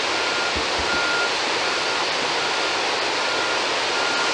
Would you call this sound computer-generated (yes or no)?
no